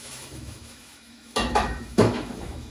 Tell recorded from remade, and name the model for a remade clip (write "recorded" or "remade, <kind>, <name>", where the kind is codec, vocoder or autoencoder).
remade, autoencoder, DAC-VAE